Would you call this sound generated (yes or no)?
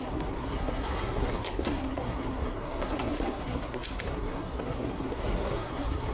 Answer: yes